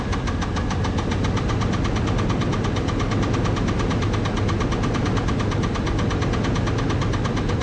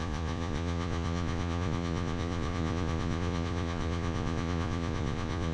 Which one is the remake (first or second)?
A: second